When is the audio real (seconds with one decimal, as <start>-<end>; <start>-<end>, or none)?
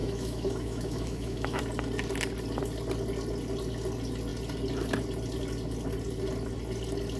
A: 1.6-7.2